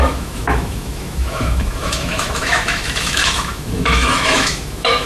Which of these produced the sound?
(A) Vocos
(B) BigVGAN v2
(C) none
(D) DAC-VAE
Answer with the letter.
D